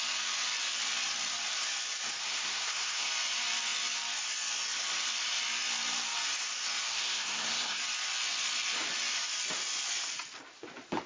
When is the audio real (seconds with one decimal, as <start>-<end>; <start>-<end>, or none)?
0.0-2.2; 3.1-6.9; 7.8-11.1